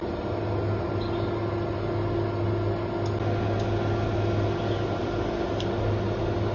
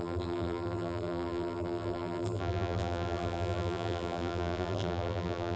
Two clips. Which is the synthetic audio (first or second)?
second